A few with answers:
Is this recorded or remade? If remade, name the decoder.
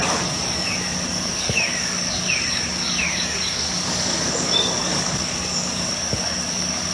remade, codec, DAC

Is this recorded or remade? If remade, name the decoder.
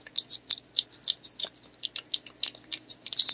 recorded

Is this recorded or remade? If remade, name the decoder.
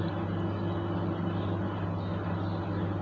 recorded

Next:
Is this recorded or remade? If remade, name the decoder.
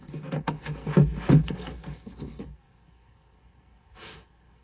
remade, codec, SNAC